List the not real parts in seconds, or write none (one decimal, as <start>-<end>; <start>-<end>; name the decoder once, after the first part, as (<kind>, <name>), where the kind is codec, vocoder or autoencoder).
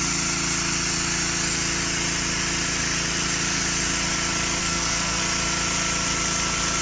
4.6-5.2 (codec, SNAC)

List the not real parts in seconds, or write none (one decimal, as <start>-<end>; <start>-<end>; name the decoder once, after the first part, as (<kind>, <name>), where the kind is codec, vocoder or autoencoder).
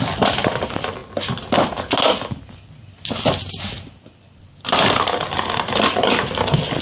0.0-1.0 (vocoder, BigVGAN v2); 4.4-6.8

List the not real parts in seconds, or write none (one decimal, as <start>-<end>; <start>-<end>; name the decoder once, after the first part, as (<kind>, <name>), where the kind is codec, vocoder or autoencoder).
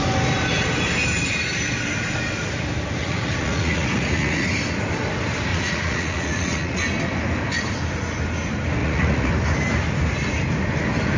3.0-4.5 (vocoder, Vocos); 5.5-6.8; 8.8-9.3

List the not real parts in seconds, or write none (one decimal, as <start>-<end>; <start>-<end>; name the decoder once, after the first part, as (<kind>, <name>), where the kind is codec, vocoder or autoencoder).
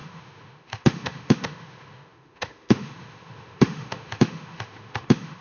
0.0-5.4 (autoencoder, DAC-VAE)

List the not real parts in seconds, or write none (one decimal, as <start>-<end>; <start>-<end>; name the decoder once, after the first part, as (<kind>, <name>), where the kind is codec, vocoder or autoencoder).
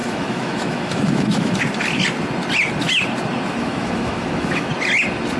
0.0-1.6 (autoencoder, DAC-VAE); 3.6-4.7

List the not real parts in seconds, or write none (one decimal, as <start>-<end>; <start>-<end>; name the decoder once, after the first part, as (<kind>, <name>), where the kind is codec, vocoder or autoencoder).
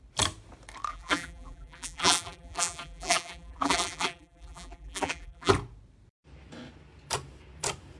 0.9-5.5 (vocoder, BigVGAN v2)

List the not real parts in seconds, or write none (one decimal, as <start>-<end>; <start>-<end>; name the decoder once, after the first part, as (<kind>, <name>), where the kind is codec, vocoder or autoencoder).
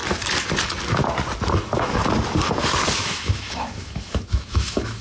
1.5-2.0 (autoencoder, DAC-VAE); 3.0-5.0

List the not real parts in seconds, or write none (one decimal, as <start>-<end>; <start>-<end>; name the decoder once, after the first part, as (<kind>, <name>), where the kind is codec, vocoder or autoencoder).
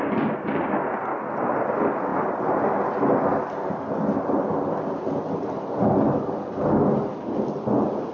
none